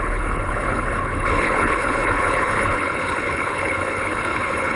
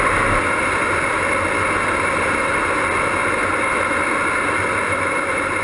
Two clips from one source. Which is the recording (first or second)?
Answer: second